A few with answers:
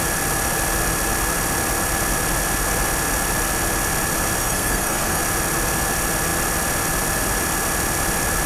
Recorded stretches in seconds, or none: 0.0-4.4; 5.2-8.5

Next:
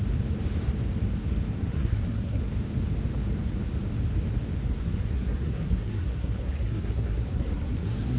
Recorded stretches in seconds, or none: 0.0-1.6; 2.4-4.7